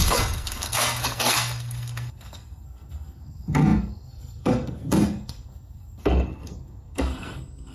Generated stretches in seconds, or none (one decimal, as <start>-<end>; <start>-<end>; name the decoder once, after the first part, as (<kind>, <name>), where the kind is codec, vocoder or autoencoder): 0.0-7.7 (codec, SNAC)